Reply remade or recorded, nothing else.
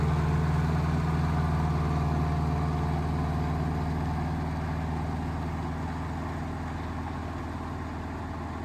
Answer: recorded